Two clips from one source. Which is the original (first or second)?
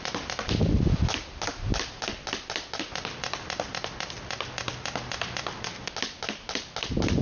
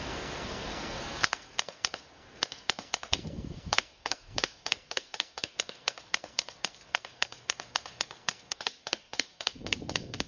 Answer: first